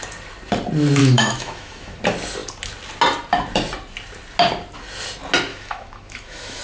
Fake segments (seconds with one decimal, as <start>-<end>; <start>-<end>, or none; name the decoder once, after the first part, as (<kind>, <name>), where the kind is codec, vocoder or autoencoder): 1.0-2.0 (autoencoder, DAC-VAE); 5.5-6.6